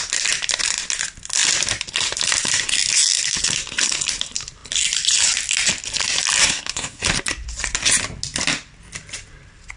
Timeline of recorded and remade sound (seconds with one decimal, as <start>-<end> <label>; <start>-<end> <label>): 0.0-6.4 recorded; 6.4-7.0 remade; 7.0-9.8 recorded